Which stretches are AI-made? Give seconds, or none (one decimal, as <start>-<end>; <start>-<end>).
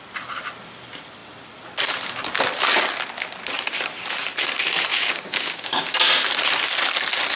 4.9-5.8